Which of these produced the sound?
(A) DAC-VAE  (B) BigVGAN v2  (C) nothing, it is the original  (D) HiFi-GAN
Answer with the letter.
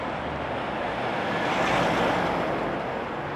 C